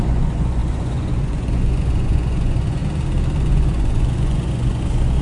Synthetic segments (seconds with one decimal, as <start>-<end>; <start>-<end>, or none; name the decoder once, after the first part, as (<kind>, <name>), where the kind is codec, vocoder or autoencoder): 0.0-2.8 (vocoder, Vocos); 3.4-5.2